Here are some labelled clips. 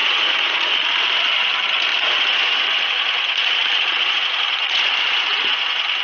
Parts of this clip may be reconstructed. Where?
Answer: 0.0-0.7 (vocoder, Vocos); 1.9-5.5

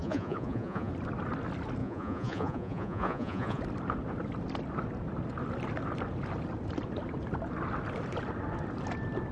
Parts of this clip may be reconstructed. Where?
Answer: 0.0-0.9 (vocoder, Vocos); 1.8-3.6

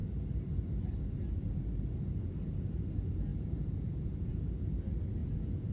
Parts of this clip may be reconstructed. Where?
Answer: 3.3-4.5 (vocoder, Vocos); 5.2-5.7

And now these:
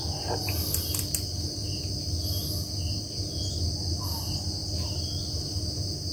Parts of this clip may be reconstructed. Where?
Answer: none